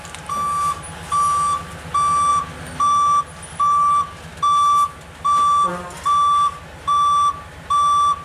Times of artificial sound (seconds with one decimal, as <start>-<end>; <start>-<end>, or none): none